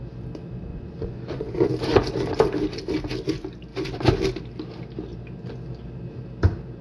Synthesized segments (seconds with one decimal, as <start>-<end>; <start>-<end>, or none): 0.7-1.7